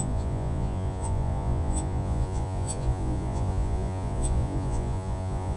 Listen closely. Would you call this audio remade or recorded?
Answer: remade